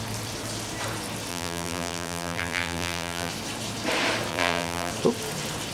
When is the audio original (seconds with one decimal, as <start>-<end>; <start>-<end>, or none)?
0.0-1.3; 3.3-4.3; 4.9-5.7